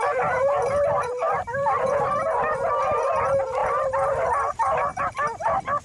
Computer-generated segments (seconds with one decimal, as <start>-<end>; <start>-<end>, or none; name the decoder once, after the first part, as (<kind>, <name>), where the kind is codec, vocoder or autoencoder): 1.2-2.1 (vocoder, BigVGAN v2); 3.6-4.5